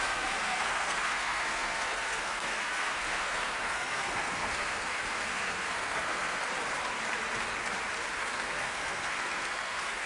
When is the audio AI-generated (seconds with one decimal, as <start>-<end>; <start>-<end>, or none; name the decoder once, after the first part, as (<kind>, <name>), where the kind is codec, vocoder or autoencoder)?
0.0-6.4 (codec, SNAC); 8.2-10.1